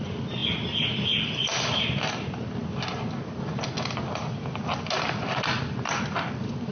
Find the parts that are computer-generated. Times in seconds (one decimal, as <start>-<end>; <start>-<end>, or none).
none